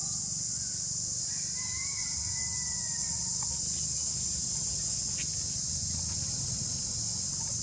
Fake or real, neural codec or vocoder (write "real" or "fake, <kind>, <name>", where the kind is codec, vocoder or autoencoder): real